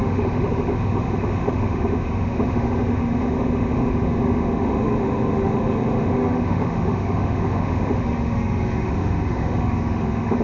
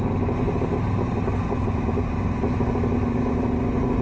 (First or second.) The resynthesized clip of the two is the first